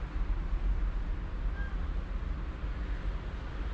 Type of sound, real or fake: real